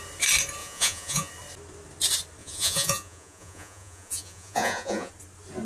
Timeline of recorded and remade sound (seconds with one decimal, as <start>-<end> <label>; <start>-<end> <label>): 0.0-0.6 recorded; 0.6-1.3 remade; 1.3-2.4 recorded; 2.4-5.1 remade; 5.1-5.7 recorded